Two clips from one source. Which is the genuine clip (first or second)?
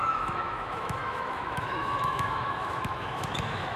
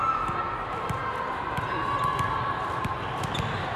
second